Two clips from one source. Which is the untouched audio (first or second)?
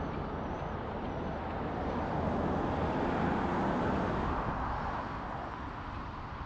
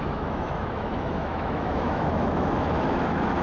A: first